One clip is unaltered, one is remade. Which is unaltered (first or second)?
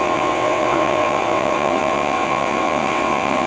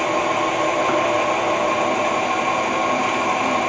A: second